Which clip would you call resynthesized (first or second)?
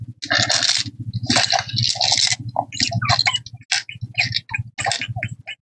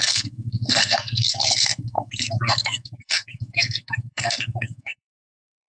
second